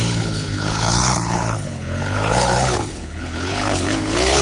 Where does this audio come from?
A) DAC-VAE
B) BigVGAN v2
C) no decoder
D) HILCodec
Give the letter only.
D